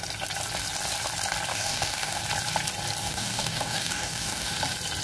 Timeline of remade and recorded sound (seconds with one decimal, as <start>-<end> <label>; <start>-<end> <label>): 0.0-1.5 recorded; 1.5-2.2 remade; 2.2-3.0 recorded; 3.0-4.5 remade; 4.5-5.0 recorded